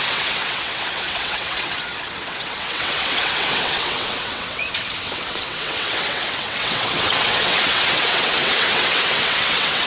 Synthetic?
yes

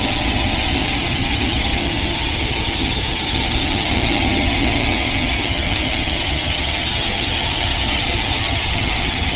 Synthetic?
yes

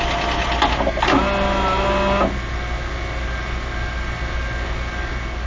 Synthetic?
no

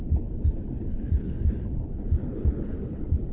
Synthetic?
yes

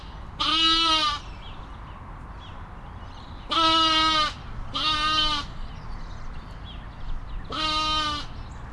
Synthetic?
no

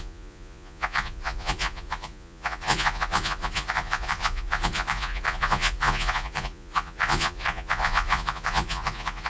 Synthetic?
yes